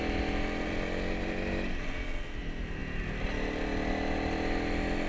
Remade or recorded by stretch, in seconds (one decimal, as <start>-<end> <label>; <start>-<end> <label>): 0.0-5.1 recorded